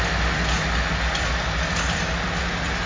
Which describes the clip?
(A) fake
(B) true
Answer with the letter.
B